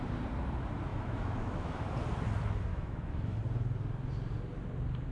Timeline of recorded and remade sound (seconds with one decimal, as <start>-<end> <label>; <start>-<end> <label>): 0.0-0.9 recorded; 0.9-1.8 remade; 1.8-2.7 recorded; 2.7-3.4 remade; 3.4-5.1 recorded